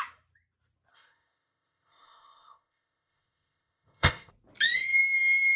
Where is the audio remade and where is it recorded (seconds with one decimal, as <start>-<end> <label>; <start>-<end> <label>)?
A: 0.0-0.9 recorded; 0.9-4.3 remade; 4.3-5.6 recorded